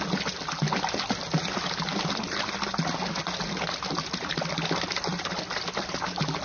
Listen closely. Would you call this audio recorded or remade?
recorded